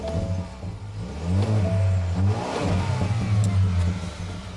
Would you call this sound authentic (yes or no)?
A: yes